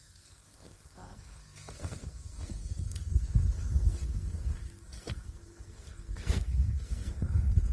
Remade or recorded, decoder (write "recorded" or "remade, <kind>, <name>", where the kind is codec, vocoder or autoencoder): remade, codec, SNAC